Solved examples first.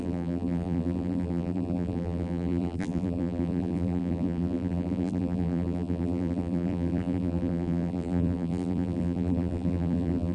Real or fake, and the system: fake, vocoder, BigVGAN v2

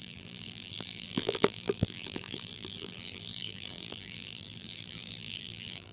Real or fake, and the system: fake, vocoder, BigVGAN v2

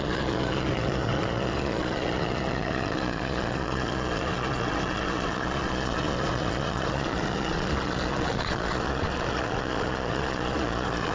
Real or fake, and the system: fake, vocoder, Vocos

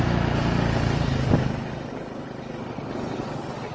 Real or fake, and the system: real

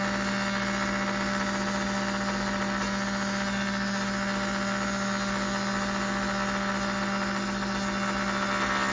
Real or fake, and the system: real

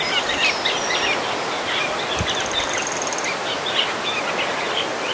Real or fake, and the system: real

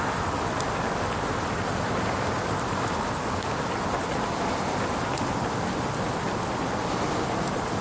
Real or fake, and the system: real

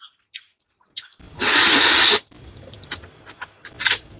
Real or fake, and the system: real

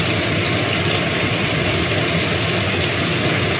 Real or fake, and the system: real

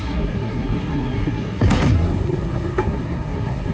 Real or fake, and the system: fake, codec, SNAC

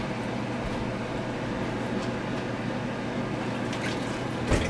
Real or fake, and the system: real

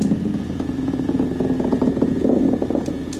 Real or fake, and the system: fake, vocoder, Vocos